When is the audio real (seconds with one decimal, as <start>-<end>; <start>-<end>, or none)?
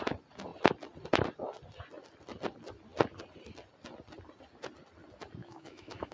0.0-5.4